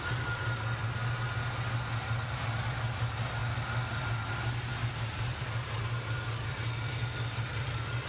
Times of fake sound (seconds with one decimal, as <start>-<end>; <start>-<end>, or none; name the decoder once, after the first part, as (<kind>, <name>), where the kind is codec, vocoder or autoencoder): none

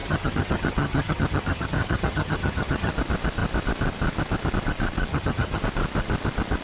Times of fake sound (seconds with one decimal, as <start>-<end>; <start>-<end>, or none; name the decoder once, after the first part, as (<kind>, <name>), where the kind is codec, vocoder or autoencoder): 0.0-2.9 (vocoder, HiFi-GAN); 5.1-5.6

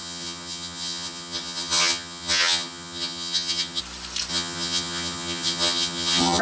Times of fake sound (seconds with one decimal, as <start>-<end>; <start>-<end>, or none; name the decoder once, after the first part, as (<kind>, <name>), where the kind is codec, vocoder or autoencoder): 0.0-3.8 (vocoder, HiFi-GAN); 4.3-6.4

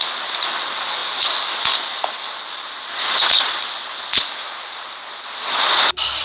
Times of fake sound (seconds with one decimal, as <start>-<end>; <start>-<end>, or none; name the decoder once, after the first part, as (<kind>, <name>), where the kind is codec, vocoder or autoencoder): none

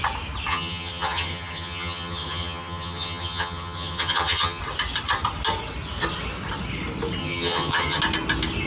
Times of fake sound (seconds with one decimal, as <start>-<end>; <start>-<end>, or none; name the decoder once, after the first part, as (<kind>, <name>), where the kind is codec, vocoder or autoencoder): 0.5-4.6 (vocoder, HiFi-GAN); 7.2-8.0

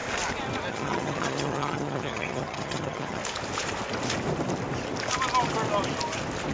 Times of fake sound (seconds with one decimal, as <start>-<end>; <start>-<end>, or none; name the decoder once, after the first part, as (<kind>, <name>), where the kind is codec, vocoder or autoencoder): 0.7-3.2 (vocoder, HiFi-GAN)

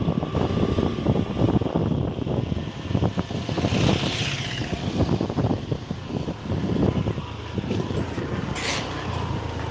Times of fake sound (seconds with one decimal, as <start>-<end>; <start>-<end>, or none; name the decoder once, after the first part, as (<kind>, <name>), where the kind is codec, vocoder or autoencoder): none